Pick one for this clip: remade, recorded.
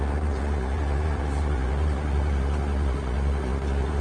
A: remade